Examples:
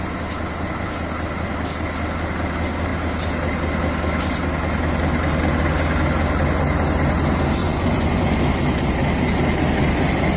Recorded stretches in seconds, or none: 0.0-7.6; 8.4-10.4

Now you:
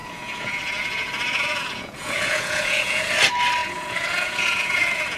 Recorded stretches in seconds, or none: 3.1-3.6

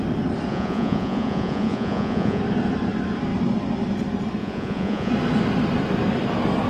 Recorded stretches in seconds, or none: 0.0-0.5; 2.4-4.4; 5.1-6.7